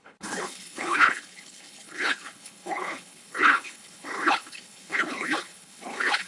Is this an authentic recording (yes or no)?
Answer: no